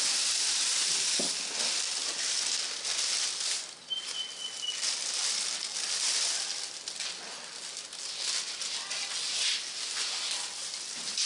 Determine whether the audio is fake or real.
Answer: real